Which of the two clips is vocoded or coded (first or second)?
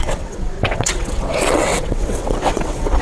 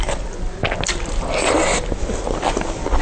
first